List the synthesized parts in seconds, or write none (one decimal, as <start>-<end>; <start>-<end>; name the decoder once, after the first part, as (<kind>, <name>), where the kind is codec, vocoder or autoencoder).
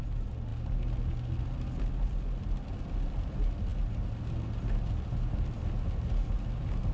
none